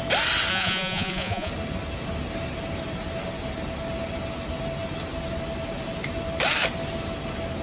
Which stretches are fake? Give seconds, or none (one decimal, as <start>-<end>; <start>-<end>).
0.5-1.5

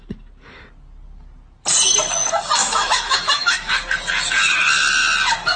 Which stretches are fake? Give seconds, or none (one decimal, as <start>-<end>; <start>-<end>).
2.6-3.7